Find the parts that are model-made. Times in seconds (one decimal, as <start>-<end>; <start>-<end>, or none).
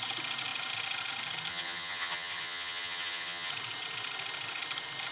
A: 1.5-3.5